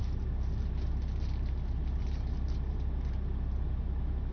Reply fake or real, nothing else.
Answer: real